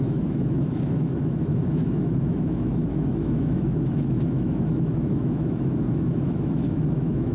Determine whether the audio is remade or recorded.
remade